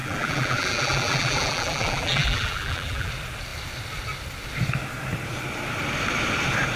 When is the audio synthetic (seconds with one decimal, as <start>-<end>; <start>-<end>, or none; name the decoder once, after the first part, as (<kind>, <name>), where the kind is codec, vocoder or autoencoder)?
0.0-3.1 (vocoder, BigVGAN v2)